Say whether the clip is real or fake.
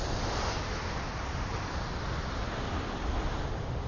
real